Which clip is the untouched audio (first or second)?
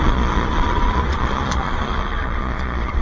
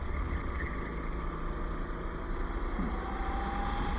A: second